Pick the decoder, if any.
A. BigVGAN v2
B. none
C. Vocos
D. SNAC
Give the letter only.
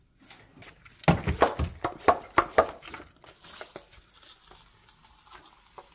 B